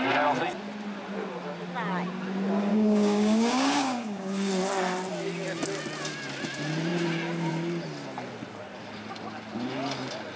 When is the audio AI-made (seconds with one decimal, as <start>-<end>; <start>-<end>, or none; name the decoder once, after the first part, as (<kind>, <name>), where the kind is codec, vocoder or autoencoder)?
2.7-4.5 (codec, DAC)